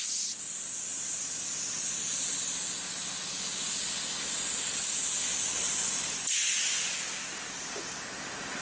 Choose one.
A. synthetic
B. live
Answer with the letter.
B